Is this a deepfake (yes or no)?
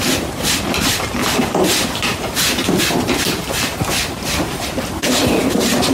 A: no